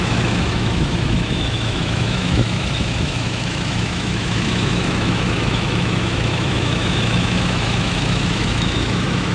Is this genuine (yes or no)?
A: no